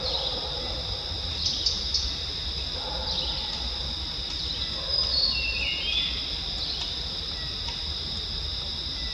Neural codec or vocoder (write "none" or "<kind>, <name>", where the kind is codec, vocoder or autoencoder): none